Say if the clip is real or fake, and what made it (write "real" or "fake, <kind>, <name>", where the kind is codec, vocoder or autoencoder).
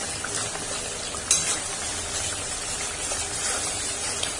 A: fake, vocoder, BigVGAN v2